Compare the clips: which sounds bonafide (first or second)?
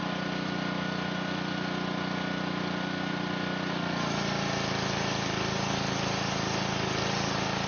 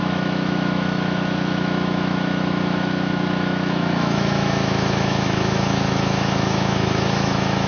first